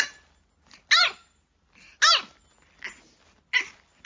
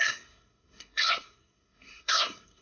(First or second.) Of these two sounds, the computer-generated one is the second